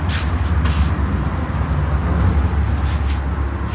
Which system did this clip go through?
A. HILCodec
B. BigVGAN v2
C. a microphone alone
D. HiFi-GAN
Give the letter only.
C